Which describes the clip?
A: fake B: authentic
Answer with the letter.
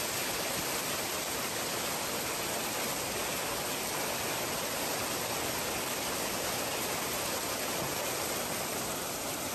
B